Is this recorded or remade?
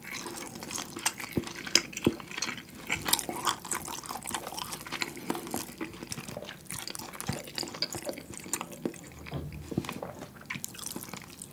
recorded